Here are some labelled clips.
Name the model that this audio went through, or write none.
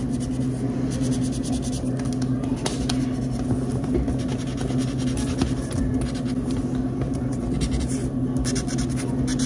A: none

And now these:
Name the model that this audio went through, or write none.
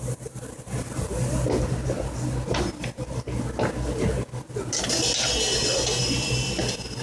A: none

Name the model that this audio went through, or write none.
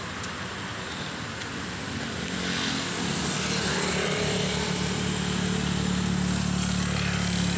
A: none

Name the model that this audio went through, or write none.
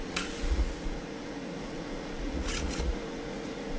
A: vocoder, Vocos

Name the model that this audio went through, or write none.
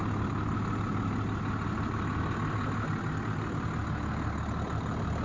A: none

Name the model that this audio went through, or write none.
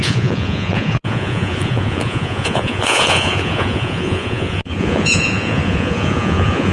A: vocoder, Vocos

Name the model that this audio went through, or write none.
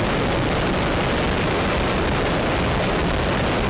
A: none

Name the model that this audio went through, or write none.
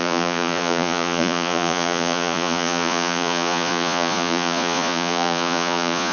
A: vocoder, Vocos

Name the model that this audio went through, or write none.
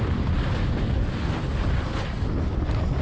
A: none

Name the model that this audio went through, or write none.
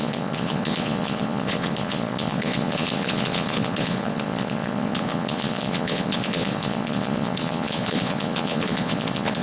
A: vocoder, Vocos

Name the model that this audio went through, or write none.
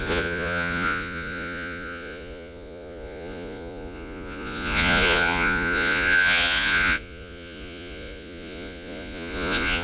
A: vocoder, Vocos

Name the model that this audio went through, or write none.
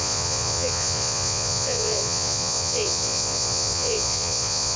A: vocoder, Vocos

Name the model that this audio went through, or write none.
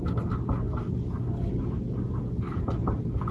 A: none